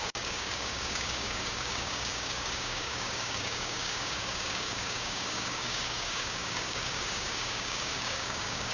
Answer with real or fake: fake